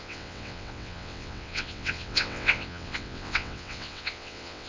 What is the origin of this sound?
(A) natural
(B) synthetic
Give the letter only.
B